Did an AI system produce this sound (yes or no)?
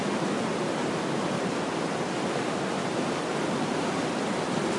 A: no